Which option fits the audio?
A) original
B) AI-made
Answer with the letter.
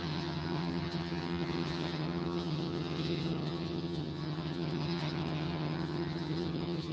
B